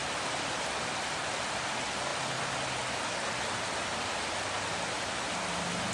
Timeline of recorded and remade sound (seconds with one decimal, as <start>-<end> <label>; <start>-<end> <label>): 0.0-5.9 recorded